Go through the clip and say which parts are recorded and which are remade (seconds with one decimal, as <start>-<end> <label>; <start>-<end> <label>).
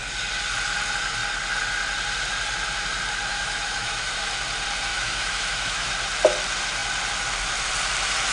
0.0-3.3 recorded; 3.3-4.1 remade; 4.1-4.9 recorded; 4.9-5.9 remade; 5.9-8.3 recorded